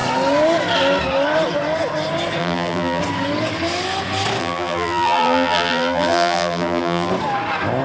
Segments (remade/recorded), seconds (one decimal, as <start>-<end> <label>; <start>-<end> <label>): 0.0-2.4 recorded; 2.4-3.0 remade; 3.0-4.4 recorded; 4.4-7.1 remade; 7.1-7.8 recorded